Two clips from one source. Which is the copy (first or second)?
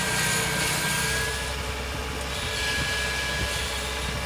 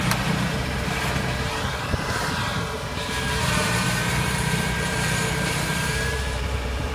second